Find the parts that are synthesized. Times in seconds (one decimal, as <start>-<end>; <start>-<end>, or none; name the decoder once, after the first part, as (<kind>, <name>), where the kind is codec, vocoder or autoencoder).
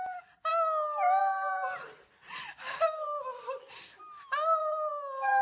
2.5-3.7 (codec, DAC); 4.6-5.4